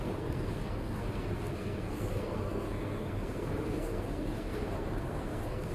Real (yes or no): no